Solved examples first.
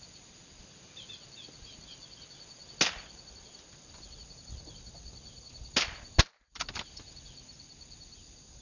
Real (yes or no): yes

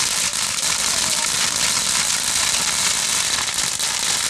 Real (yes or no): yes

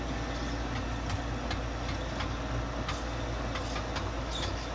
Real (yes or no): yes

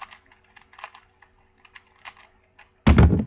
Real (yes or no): yes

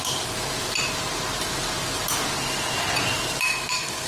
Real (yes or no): yes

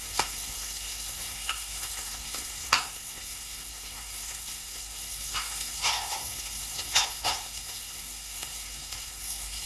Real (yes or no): no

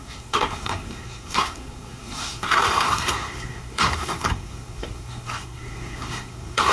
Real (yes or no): no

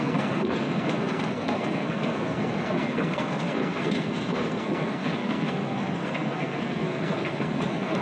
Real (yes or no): no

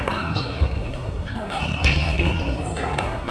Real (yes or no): no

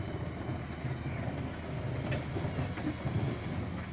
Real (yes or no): yes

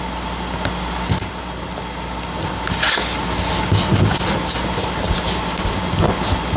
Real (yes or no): yes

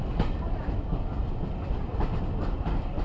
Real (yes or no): yes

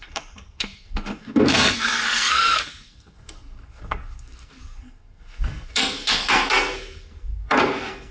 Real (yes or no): no